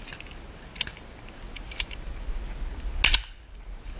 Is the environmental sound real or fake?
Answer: real